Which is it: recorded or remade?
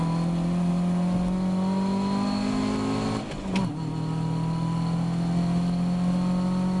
recorded